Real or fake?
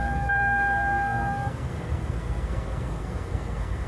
fake